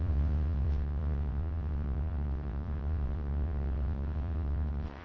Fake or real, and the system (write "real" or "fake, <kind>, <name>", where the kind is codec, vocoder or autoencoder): fake, vocoder, WaveNeXt